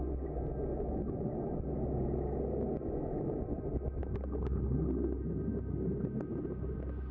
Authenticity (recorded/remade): recorded